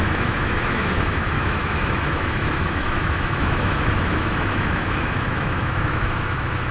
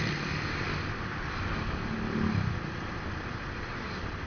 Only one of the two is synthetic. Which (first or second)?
first